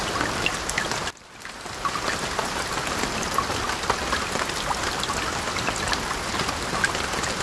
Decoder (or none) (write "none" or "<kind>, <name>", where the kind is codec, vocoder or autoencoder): none